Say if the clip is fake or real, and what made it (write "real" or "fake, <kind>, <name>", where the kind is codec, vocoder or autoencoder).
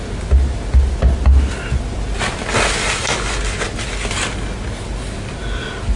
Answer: real